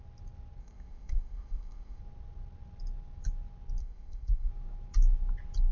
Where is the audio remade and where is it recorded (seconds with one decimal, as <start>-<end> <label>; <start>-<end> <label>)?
0.0-0.6 recorded; 0.6-2.0 remade; 2.0-3.8 recorded; 3.8-4.5 remade; 4.5-5.7 recorded

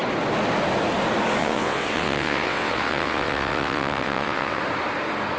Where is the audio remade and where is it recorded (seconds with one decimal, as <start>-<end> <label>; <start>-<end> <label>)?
0.0-1.4 recorded; 1.4-4.6 remade; 4.6-5.4 recorded